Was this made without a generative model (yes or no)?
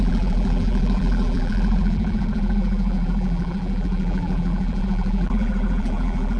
no